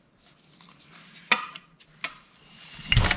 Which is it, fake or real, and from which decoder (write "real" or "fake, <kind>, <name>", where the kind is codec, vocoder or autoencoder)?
real